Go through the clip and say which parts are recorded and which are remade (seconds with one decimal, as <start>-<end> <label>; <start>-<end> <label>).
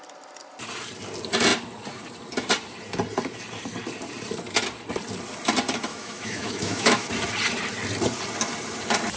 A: 0.0-5.9 recorded; 5.9-7.1 remade; 7.1-9.2 recorded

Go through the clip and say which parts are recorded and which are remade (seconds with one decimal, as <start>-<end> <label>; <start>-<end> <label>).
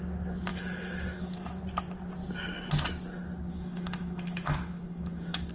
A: 0.0-0.5 recorded; 0.5-1.6 remade; 1.6-3.5 recorded; 3.5-5.5 remade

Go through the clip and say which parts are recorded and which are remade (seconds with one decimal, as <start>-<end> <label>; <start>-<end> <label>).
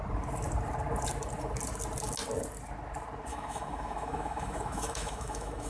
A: 0.0-3.3 recorded; 3.3-5.7 remade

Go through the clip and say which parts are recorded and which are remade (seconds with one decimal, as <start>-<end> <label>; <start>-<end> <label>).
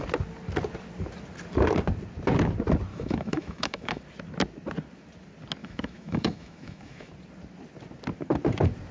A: 0.0-2.9 recorded; 2.9-4.0 remade; 4.0-5.6 recorded; 5.6-7.1 remade; 7.1-8.9 recorded